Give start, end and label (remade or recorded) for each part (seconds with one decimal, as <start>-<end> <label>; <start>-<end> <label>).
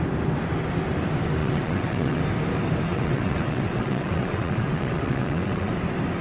0.0-1.4 recorded; 1.4-2.2 remade; 2.2-2.9 recorded; 2.9-5.7 remade; 5.7-6.2 recorded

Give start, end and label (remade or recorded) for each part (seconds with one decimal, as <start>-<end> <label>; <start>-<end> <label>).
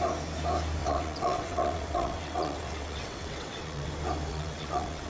0.0-0.8 recorded; 0.8-3.9 remade; 3.9-4.3 recorded; 4.3-5.1 remade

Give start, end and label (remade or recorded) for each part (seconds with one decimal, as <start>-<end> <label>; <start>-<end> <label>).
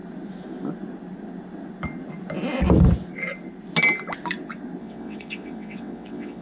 0.0-4.8 recorded; 4.8-6.4 remade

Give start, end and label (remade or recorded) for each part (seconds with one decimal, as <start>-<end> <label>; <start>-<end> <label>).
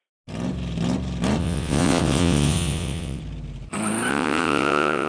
0.0-1.4 recorded; 1.4-3.2 remade; 3.2-4.1 recorded; 4.1-5.1 remade